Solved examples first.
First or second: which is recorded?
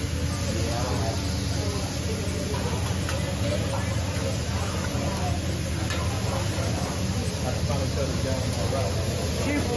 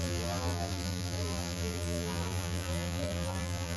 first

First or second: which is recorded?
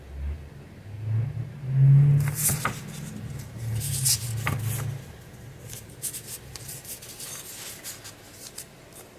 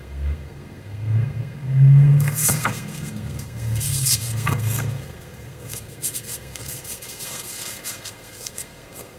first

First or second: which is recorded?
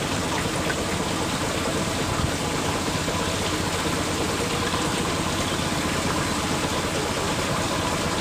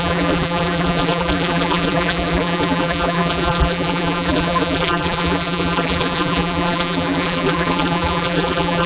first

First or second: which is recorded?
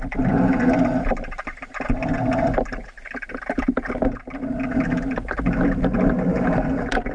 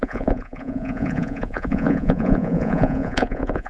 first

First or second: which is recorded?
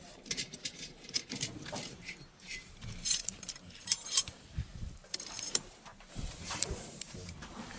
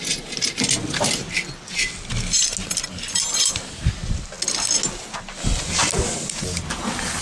second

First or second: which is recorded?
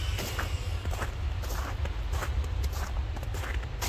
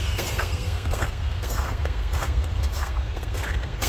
first